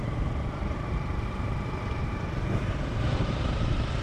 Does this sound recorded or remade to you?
remade